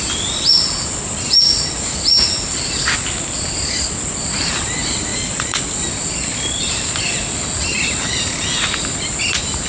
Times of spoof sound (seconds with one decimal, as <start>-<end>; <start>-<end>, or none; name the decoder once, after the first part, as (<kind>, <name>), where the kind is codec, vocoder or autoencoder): 5.1-5.6 (vocoder, Vocos)